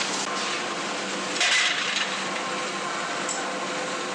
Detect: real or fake real